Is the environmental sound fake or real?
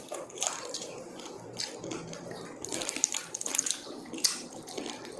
real